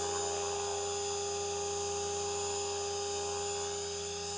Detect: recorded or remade recorded